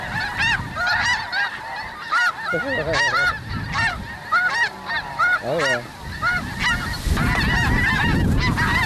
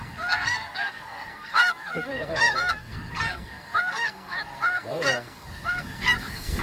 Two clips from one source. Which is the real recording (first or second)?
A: first